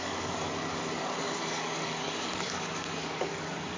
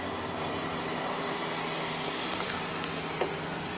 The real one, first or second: second